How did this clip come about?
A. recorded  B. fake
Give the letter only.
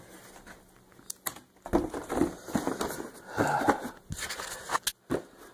A